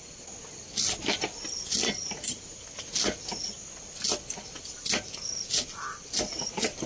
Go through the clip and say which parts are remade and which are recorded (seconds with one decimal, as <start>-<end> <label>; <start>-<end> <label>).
0.0-6.9 recorded